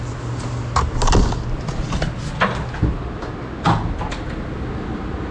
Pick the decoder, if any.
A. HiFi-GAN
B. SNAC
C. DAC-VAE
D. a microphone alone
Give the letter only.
D